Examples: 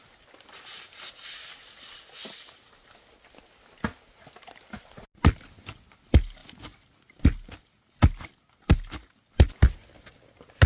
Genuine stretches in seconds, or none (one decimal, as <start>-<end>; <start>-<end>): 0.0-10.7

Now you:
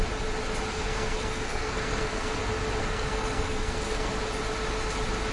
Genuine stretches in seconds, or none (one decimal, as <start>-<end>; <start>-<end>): 0.0-0.7; 2.4-2.8; 4.1-5.3

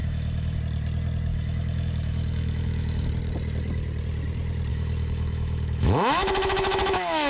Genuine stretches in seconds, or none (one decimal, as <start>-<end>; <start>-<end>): 0.6-1.3; 3.1-4.7

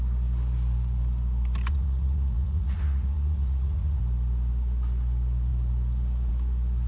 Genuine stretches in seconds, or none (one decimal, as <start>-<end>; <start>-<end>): 0.0-1.7; 4.0-6.9

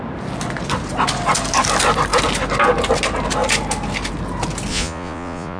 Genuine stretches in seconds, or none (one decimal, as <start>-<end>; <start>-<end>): 0.0-4.7

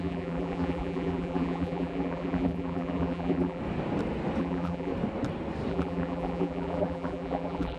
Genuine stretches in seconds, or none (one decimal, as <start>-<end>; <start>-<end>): 3.6-4.4; 4.9-5.7

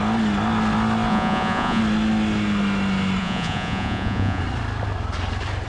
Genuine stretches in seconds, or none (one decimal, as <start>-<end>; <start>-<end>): 0.0-1.1; 1.8-3.2; 4.4-5.7